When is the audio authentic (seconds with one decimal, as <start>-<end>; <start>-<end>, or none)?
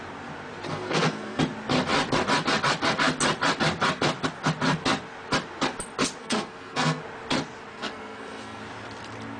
0.0-0.7; 1.4-6.2; 7.0-7.7; 8.6-9.4